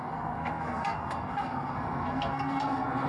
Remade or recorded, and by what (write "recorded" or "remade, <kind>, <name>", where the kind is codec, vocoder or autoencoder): remade, codec, SNAC